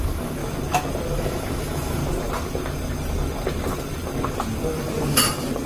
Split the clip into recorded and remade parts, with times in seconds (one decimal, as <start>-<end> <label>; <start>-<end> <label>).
0.0-0.4 remade; 0.4-1.1 recorded; 1.1-2.0 remade; 2.0-5.7 recorded